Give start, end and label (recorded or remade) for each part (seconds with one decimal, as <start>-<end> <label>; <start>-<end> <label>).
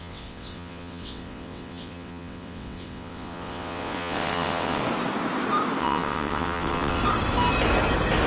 0.0-4.8 remade; 4.8-5.8 recorded; 5.8-7.0 remade; 7.0-8.3 recorded